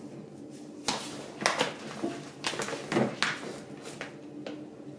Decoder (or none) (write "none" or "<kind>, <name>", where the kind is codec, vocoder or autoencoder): none